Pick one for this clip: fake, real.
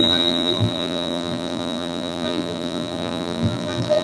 fake